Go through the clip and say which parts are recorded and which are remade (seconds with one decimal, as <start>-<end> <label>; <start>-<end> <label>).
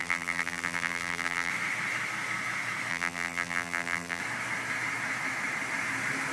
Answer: 0.0-1.5 remade; 1.5-2.9 recorded; 2.9-4.2 remade; 4.2-6.3 recorded